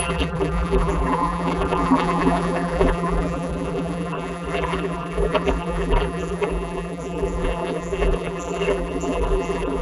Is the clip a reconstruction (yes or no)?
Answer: yes